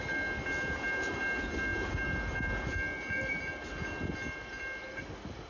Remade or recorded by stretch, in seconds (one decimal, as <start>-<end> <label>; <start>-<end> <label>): 0.0-5.5 recorded